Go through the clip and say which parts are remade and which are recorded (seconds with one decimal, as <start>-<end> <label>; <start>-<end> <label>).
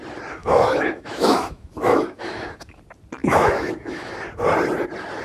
0.0-0.4 recorded; 0.4-2.8 remade; 2.8-3.2 recorded; 3.2-4.1 remade; 4.1-5.2 recorded